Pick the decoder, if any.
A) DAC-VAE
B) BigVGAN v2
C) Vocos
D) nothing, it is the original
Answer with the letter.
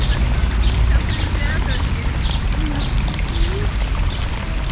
D